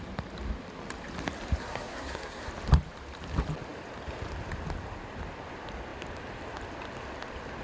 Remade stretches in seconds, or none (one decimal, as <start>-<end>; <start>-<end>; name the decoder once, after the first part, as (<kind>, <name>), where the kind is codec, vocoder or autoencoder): 1.6-2.5 (codec, SNAC)